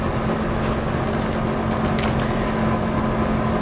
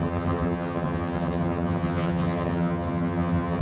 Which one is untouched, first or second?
first